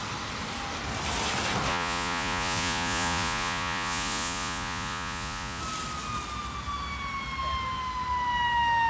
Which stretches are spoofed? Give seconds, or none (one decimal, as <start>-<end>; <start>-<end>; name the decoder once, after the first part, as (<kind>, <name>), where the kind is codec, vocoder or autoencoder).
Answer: 1.7-5.6 (vocoder, Vocos)